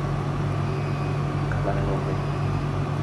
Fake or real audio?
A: real